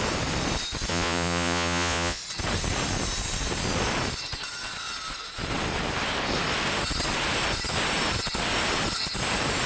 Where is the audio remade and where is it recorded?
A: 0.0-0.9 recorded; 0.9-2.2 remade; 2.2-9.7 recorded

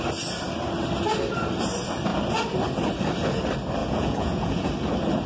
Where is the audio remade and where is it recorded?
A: 0.0-3.8 recorded; 3.8-4.7 remade; 4.7-5.3 recorded

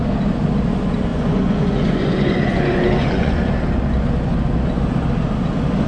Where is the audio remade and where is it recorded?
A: 0.0-1.1 recorded; 1.1-3.5 remade; 3.5-5.9 recorded

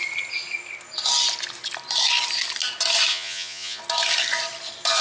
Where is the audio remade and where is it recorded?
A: 0.0-3.1 recorded; 3.1-3.8 remade; 3.8-5.0 recorded

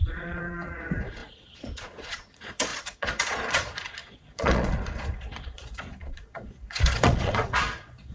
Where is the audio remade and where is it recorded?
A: 0.0-8.1 remade

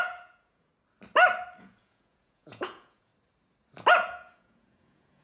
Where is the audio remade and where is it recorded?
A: 0.0-0.7 remade; 0.7-1.6 recorded; 1.6-3.1 remade; 3.1-3.9 recorded; 3.9-5.2 remade

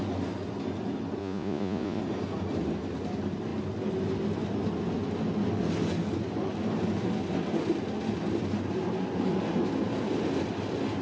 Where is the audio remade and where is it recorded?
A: 0.0-1.2 recorded; 1.2-2.0 remade; 2.0-11.0 recorded